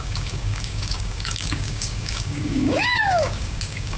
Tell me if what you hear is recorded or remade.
remade